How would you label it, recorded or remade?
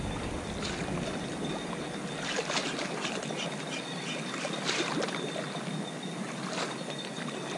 recorded